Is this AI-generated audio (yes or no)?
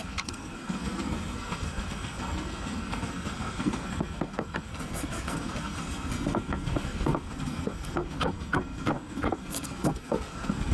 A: yes